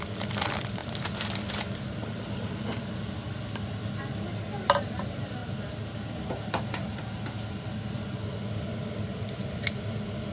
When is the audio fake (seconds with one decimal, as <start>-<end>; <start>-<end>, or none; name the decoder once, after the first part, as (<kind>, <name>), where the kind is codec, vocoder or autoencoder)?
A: none